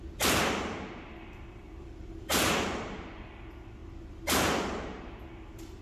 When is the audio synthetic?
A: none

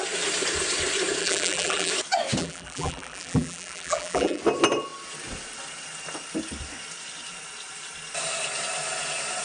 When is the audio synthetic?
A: 1.2-1.9 (vocoder, BigVGAN v2); 2.4-4.4